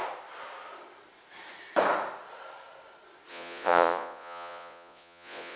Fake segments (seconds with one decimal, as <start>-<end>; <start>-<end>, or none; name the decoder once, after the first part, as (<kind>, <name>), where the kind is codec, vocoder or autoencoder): 3.3-5.5 (vocoder, Vocos)